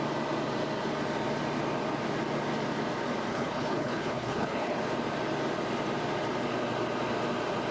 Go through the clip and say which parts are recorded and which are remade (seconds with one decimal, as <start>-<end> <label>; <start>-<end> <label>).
0.0-3.3 recorded; 3.3-4.8 remade; 4.8-7.7 recorded